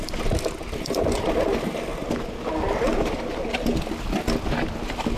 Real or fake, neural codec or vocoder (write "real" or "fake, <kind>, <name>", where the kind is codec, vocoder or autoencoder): real